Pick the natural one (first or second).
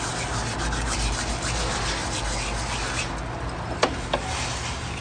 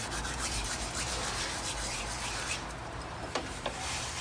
first